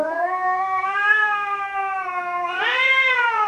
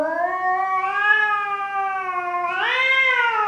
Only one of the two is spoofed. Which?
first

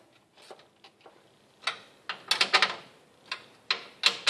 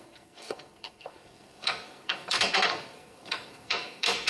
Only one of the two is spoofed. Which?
second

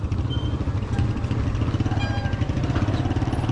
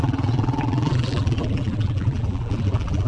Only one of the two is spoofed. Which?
second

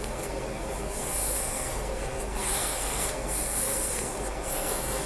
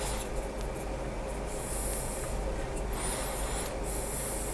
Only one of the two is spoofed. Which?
first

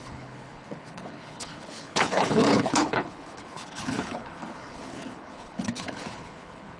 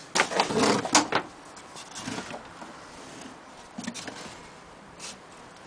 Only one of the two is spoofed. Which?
first